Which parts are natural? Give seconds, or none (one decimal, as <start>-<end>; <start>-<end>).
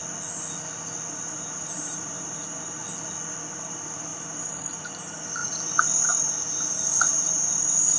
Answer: 0.0-1.1; 2.8-3.5